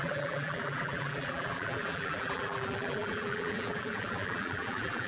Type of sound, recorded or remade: remade